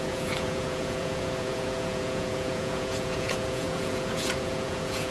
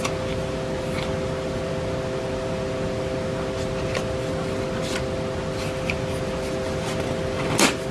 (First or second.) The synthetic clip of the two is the first